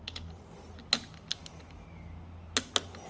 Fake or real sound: real